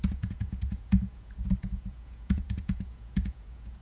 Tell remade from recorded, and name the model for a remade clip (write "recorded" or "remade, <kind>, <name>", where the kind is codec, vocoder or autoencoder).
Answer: remade, vocoder, Vocos